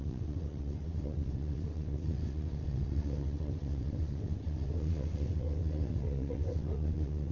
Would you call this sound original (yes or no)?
no